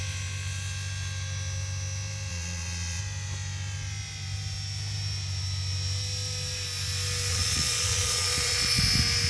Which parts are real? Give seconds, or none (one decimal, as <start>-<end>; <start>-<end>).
0.0-2.3; 3.0-7.3; 8.8-9.3